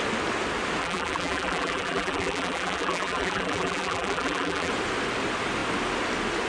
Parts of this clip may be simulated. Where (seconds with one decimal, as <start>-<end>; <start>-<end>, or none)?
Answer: 0.8-4.7